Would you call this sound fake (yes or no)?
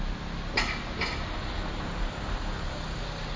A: no